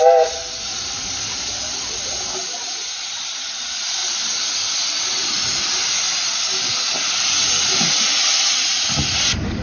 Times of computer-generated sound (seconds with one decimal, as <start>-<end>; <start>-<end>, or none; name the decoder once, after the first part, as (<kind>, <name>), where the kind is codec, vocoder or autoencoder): 0.0-0.7 (vocoder, BigVGAN v2); 2.3-9.6